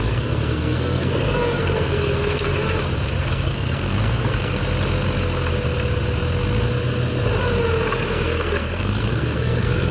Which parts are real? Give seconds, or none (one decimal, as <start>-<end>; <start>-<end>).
2.5-3.2; 4.6-8.1